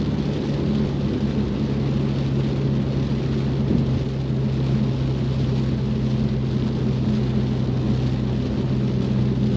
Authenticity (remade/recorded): recorded